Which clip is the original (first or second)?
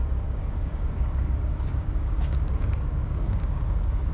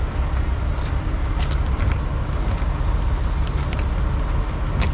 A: second